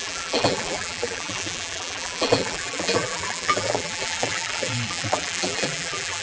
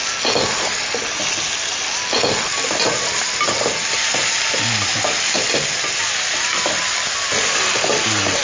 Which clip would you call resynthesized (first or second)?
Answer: first